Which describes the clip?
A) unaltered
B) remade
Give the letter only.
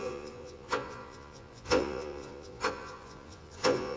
B